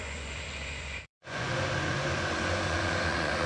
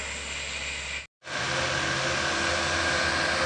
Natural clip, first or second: second